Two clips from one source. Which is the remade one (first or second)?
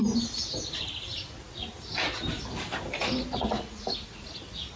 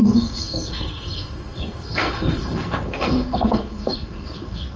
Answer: second